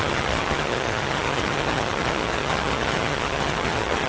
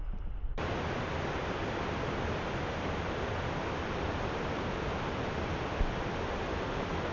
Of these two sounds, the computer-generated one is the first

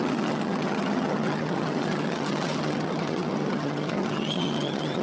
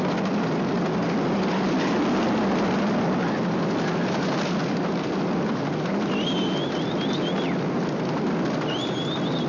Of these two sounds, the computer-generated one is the first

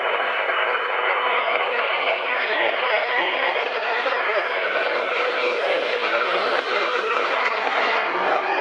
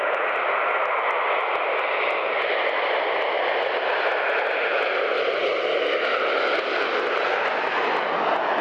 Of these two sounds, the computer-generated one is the first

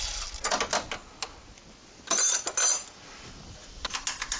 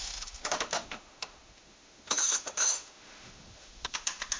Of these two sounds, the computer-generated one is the second